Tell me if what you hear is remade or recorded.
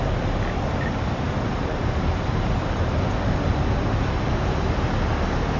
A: recorded